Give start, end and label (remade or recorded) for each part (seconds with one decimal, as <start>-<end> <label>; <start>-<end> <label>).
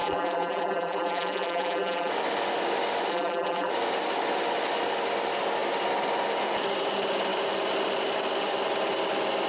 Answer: 0.0-2.1 remade; 2.1-3.1 recorded; 3.1-3.7 remade; 3.7-9.5 recorded